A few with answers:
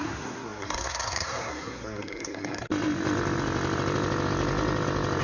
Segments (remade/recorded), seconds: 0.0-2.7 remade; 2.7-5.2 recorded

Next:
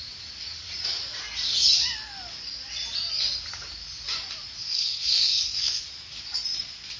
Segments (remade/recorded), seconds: 0.0-4.6 recorded; 4.6-5.8 remade; 5.8-7.0 recorded

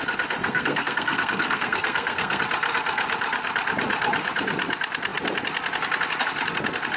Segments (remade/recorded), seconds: 0.0-0.4 recorded; 0.4-2.4 remade; 2.4-7.0 recorded

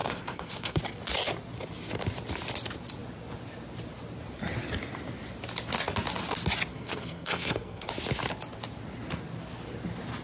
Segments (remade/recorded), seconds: 0.0-0.8 remade; 0.8-6.7 recorded; 6.7-7.9 remade; 7.9-10.2 recorded

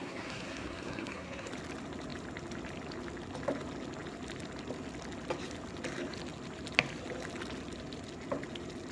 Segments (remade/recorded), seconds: 0.0-1.5 remade; 1.5-8.9 recorded

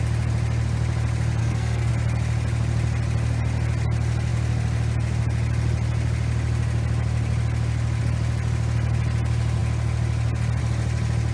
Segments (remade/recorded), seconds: 0.0-1.4 recorded; 1.4-1.9 remade; 1.9-11.3 recorded